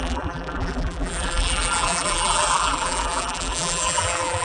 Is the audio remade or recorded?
remade